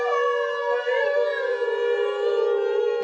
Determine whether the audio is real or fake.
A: real